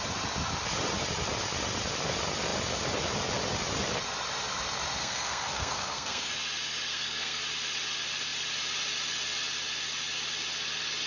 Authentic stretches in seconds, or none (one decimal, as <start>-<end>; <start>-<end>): 0.0-5.0; 6.3-6.9; 7.4-11.1